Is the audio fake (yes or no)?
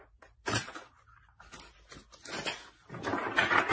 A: no